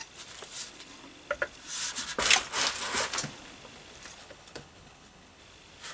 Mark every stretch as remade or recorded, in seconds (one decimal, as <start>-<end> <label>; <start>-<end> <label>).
0.0-4.2 recorded; 4.2-5.4 remade; 5.4-5.9 recorded